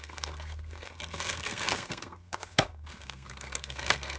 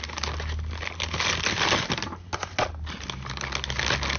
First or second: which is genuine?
second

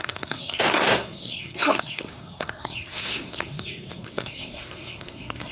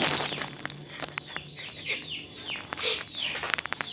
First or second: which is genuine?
second